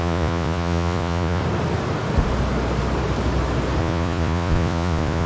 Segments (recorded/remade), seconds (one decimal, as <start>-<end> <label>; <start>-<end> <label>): 0.0-1.4 remade; 1.4-3.8 recorded; 3.8-5.3 remade